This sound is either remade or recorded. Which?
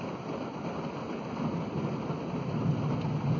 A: recorded